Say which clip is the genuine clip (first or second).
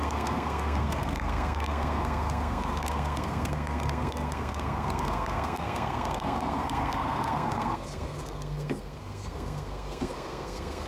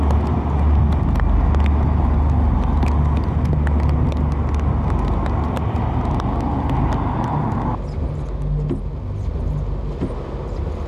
second